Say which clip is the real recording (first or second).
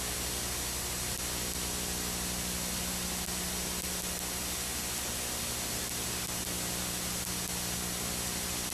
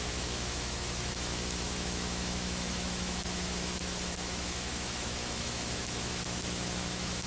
first